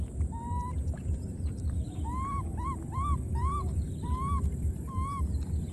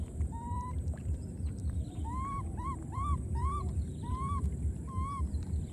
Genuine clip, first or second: first